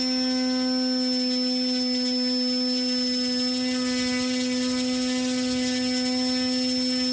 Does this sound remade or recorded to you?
recorded